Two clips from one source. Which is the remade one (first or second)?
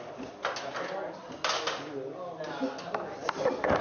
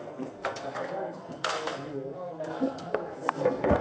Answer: second